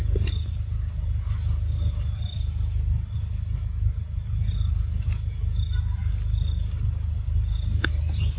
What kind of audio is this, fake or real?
real